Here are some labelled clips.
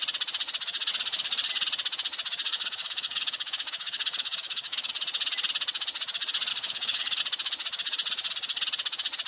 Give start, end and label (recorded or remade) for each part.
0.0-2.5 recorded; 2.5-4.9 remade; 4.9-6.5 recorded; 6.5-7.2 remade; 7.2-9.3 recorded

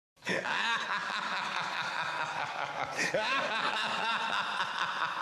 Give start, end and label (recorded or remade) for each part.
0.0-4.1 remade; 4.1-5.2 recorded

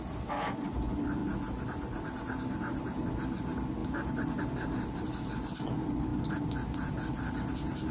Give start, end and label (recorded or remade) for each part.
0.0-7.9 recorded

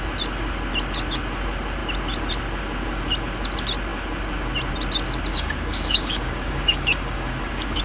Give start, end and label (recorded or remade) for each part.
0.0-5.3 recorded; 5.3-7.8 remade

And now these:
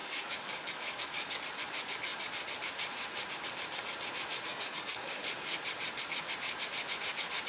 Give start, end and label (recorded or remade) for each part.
0.0-1.4 remade; 1.4-4.5 recorded; 4.5-5.2 remade; 5.2-7.5 recorded

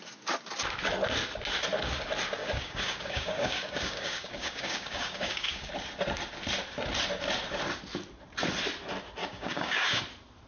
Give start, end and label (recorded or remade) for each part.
0.0-2.4 recorded; 2.4-5.7 remade; 5.7-9.2 recorded; 9.2-10.0 remade; 10.0-10.5 recorded